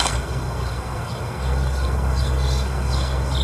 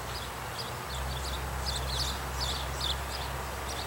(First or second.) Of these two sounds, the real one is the second